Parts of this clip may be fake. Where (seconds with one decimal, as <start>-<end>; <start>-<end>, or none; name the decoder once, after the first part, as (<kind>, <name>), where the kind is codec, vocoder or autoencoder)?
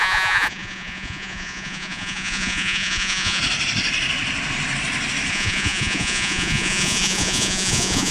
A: 0.0-3.4 (vocoder, Vocos); 5.3-8.1